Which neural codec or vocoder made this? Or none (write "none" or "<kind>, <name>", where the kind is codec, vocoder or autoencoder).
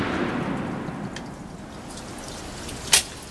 none